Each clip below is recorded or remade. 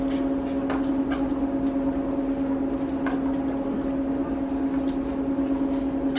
recorded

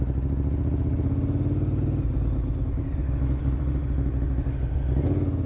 recorded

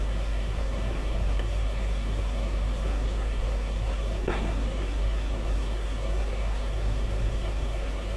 remade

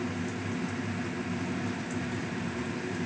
recorded